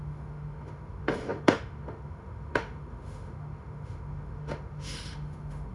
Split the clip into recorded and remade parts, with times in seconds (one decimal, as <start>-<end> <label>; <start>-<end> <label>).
0.0-5.7 remade